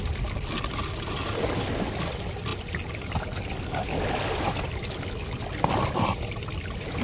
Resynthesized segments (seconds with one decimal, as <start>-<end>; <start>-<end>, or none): none